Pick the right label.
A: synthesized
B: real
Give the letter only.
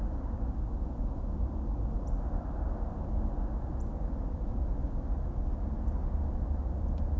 B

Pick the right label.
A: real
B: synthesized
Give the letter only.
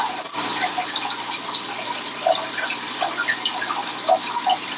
A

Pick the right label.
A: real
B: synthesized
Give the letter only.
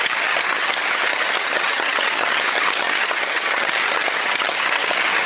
B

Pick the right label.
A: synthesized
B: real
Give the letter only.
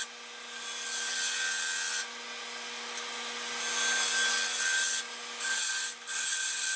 B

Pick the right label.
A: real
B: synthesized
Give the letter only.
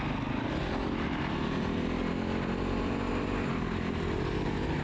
A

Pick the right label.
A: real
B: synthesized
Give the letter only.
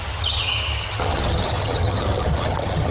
B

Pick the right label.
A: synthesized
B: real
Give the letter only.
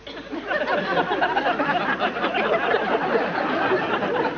B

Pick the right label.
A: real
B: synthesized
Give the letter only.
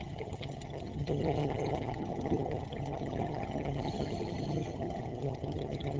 B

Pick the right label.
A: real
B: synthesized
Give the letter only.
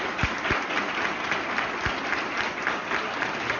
A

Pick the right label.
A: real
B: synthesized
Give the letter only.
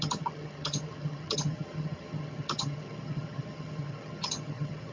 B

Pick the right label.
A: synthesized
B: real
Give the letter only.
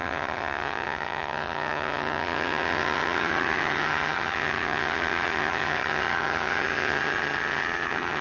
A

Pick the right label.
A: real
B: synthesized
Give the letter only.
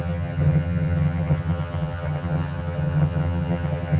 B